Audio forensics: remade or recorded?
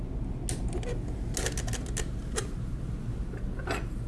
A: recorded